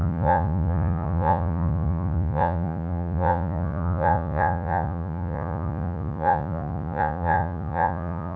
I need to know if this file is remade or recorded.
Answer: remade